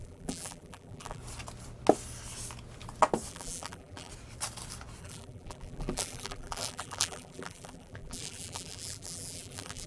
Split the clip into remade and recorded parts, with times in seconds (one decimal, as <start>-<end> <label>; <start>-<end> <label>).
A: 0.0-1.2 remade; 1.2-3.3 recorded; 3.3-4.1 remade; 4.1-5.0 recorded; 5.0-9.9 remade